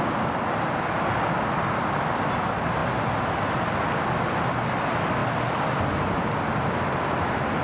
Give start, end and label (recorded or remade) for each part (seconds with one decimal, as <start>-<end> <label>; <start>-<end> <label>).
0.0-7.6 recorded